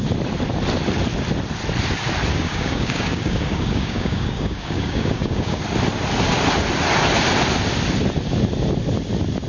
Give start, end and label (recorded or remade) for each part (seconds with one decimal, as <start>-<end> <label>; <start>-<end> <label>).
0.0-2.3 recorded; 2.3-5.6 remade; 5.6-9.5 recorded